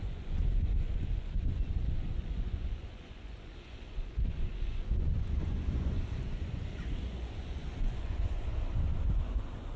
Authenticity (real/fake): fake